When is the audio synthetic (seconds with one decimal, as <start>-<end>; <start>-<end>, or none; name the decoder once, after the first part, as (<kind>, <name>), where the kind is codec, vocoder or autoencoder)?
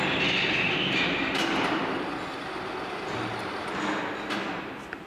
none